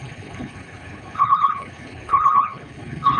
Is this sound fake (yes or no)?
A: yes